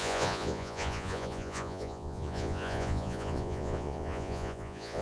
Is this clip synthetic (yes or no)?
yes